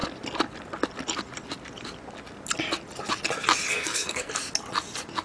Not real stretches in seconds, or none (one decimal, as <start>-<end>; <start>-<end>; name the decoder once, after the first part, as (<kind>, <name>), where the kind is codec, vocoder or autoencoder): 3.7-4.3 (codec, SNAC)